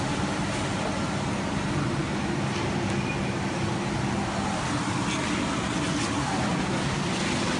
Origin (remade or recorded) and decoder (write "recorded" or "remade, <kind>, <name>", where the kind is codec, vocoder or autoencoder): recorded